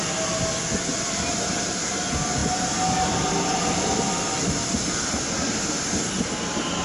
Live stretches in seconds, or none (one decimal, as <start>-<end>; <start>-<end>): 0.0-6.8